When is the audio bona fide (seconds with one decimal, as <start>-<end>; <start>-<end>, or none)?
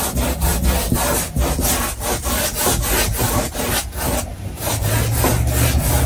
0.0-4.3; 4.9-6.1